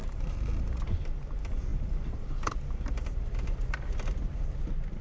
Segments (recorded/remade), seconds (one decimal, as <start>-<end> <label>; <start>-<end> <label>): 0.0-0.8 remade; 0.8-5.0 recorded